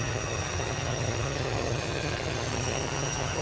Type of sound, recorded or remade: remade